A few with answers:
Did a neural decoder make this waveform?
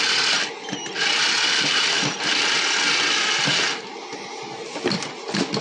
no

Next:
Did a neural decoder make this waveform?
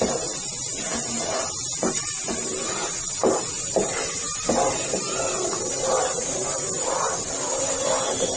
no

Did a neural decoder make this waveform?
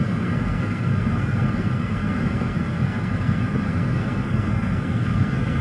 yes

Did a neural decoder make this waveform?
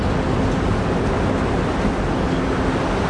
no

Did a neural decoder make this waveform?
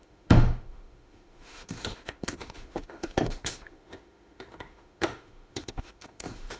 yes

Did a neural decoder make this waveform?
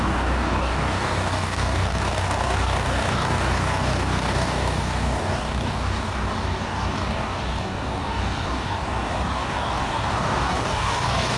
yes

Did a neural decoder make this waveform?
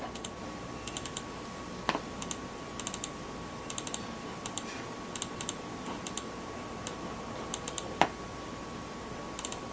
no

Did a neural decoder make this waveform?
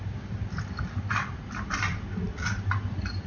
no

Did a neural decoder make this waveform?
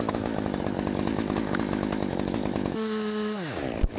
yes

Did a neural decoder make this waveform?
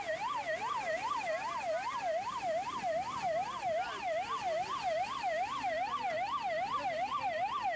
no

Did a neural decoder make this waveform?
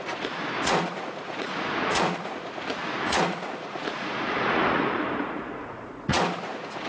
yes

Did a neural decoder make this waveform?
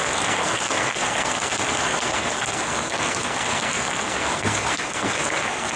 yes